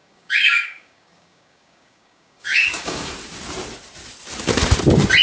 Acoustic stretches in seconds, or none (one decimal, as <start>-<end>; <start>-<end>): 3.1-5.2